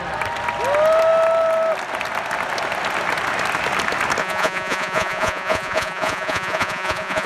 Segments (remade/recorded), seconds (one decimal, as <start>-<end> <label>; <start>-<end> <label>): 0.0-4.2 recorded; 4.2-7.3 remade